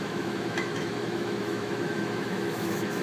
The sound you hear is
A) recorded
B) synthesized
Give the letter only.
B